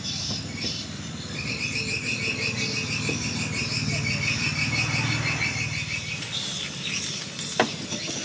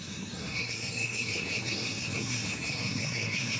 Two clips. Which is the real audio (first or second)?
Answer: first